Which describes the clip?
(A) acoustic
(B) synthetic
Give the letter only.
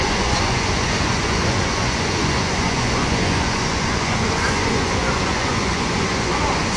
B